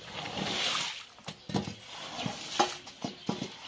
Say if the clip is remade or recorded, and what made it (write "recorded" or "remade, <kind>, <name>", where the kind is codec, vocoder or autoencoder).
recorded